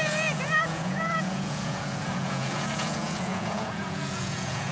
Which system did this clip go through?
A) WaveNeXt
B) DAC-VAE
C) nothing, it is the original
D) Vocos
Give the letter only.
D